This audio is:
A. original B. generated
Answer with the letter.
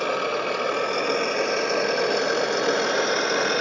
A